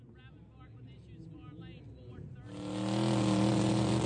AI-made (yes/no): no